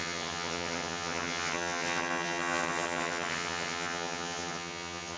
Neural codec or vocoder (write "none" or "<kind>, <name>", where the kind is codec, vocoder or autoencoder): vocoder, HiFi-GAN